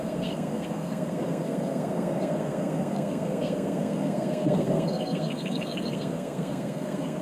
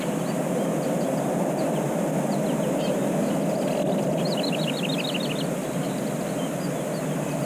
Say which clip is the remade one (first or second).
first